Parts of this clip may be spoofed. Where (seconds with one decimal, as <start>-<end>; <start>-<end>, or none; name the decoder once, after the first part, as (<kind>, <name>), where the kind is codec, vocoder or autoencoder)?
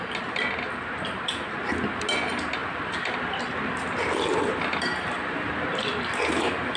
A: 2.6-6.1 (vocoder, BigVGAN v2)